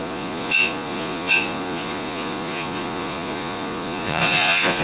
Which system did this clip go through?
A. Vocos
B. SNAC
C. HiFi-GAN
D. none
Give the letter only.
A